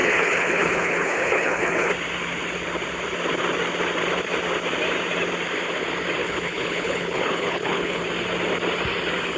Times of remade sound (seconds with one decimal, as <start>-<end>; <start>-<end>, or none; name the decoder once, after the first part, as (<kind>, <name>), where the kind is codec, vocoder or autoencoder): 0.0-1.9 (codec, HILCodec); 6.2-8.0